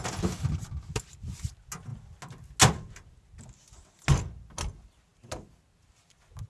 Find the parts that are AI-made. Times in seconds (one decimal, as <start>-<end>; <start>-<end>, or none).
none